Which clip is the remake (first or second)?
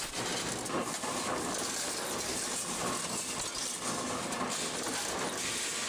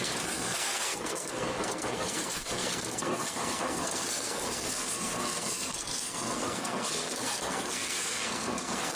second